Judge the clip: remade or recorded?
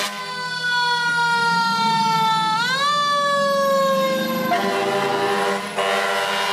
recorded